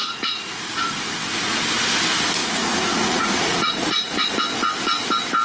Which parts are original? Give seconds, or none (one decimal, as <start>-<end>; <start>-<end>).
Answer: 1.6-2.4; 4.3-5.4